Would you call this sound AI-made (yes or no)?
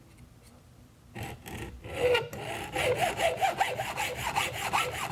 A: yes